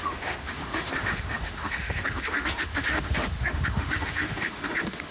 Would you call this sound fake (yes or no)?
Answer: yes